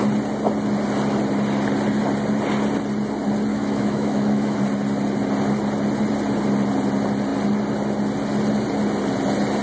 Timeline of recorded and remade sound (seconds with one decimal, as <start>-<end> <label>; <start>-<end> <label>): 0.0-3.5 recorded; 3.5-4.6 remade; 4.6-9.6 recorded